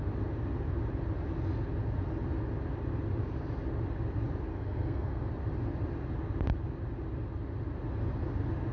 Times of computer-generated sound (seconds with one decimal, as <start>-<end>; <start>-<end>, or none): 4.5-5.3